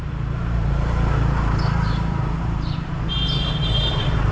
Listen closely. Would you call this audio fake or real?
fake